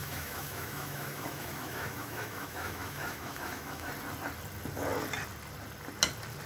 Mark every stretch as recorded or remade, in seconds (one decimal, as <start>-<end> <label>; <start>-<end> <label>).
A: 0.0-3.9 remade; 3.9-6.5 recorded